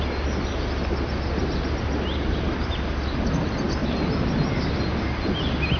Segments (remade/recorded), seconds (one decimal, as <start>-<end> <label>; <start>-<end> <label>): 0.0-5.8 recorded